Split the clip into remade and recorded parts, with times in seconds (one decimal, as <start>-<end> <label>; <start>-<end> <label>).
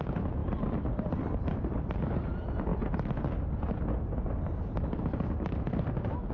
0.0-2.7 remade; 2.7-6.3 recorded